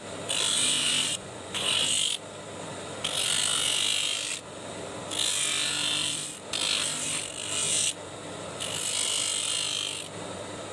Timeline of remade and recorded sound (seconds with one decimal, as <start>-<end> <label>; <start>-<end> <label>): 0.0-1.1 recorded; 1.1-1.7 remade; 1.7-10.7 recorded